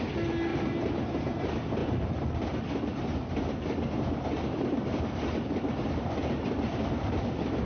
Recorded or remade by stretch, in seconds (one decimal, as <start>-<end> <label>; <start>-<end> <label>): 0.0-0.5 recorded; 0.5-1.4 remade; 1.4-7.7 recorded